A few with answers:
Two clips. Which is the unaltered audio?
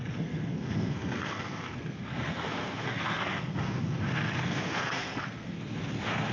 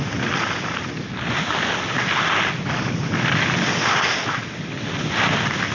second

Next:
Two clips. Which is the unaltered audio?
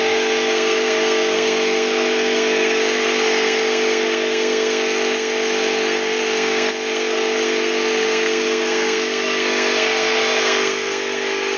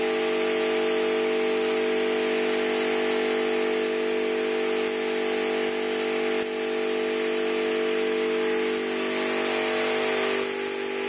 second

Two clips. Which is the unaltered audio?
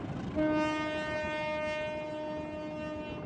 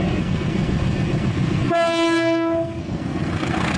first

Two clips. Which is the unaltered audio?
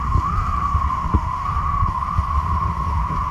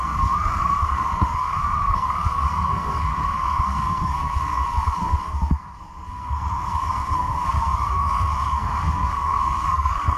first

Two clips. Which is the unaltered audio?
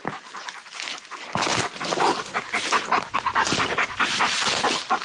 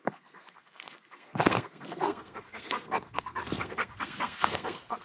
first